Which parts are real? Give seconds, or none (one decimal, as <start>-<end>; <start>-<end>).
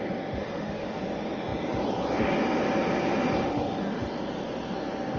0.0-0.4; 1.0-3.4; 4.0-5.2